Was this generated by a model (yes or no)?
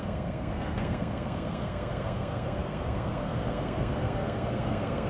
yes